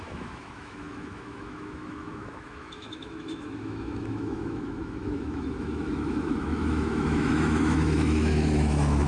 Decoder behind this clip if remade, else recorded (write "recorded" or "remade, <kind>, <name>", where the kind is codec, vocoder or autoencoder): remade, autoencoder, DAC-VAE